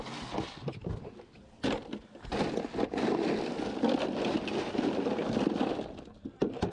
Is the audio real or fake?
real